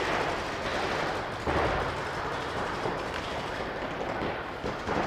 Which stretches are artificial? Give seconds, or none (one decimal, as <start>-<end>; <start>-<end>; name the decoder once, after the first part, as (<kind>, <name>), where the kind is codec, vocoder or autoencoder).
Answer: 2.3-3.3 (vocoder, BigVGAN v2)